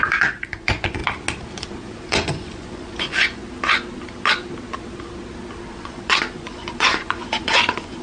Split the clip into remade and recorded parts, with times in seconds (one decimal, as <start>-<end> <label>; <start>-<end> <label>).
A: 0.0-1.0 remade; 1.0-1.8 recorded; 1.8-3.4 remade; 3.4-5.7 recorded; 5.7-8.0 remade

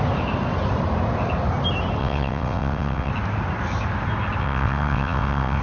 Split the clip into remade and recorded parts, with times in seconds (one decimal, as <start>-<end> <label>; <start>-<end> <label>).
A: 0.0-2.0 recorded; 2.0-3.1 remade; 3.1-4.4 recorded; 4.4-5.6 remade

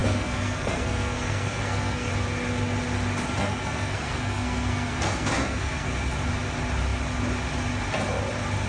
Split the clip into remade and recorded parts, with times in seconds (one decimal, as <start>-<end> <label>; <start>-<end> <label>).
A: 0.0-2.1 remade; 2.1-3.4 recorded; 3.4-5.9 remade; 5.9-8.7 recorded

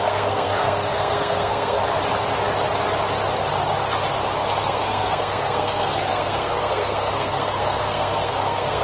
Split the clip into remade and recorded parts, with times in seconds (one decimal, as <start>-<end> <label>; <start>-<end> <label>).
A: 0.0-1.8 remade; 1.8-4.5 recorded; 4.5-8.8 remade

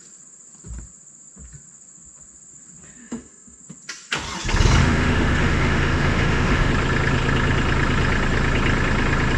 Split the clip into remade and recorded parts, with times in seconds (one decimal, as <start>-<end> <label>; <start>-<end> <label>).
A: 0.0-3.0 recorded; 3.0-3.6 remade; 3.6-4.8 recorded; 4.8-6.7 remade; 6.7-9.4 recorded

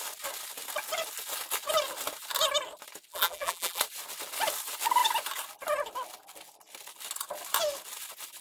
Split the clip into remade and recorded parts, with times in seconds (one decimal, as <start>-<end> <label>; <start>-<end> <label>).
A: 0.0-3.1 recorded; 3.1-3.8 remade; 3.8-8.4 recorded